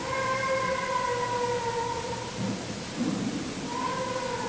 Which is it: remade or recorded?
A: recorded